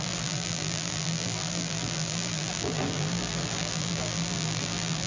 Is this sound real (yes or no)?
no